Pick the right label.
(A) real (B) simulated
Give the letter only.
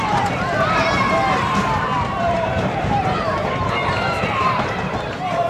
B